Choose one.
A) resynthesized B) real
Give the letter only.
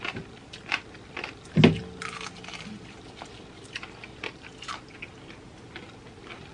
B